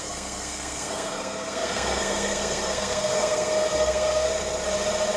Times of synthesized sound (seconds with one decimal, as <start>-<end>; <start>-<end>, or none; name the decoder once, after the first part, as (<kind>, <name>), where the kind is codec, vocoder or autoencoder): 0.0-4.3 (codec, SNAC)